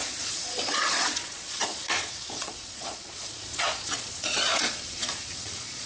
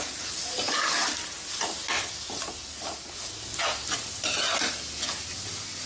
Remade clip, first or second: first